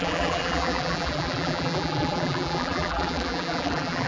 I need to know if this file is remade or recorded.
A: remade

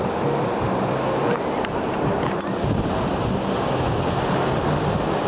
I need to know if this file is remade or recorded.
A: recorded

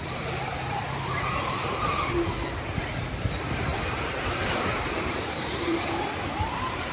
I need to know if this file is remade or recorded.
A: remade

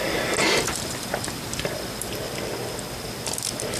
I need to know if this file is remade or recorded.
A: recorded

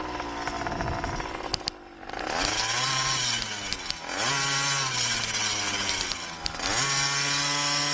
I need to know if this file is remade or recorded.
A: recorded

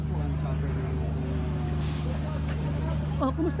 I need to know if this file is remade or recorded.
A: recorded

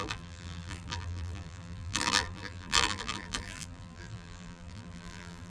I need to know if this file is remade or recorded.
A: remade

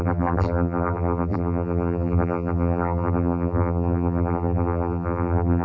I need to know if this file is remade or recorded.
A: remade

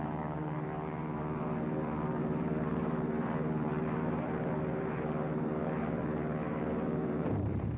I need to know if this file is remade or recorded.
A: remade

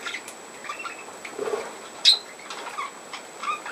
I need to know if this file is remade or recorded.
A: recorded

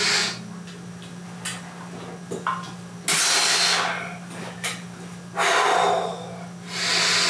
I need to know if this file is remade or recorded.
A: recorded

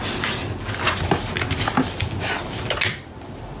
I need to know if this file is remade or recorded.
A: recorded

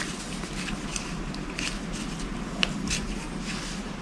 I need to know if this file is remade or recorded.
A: recorded